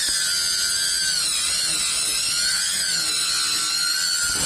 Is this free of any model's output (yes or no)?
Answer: yes